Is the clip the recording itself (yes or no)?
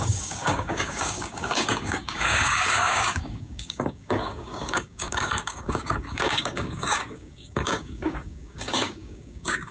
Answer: no